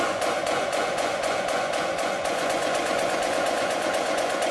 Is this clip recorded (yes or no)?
no